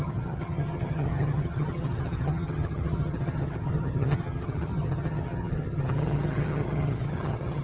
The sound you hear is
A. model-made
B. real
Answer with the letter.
A